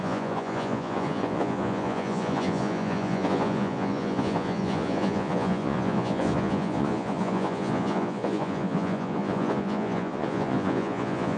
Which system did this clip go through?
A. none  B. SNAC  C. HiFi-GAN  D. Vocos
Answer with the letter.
D